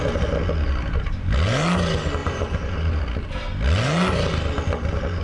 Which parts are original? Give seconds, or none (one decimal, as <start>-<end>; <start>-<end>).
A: 0.0-2.2; 3.0-5.2